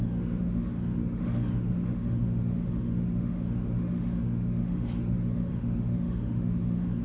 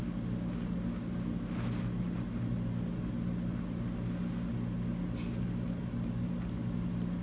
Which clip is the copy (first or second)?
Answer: first